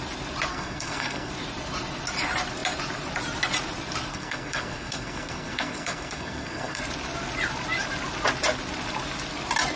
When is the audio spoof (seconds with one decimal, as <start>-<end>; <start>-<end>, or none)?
0.5-1.3; 4.1-6.8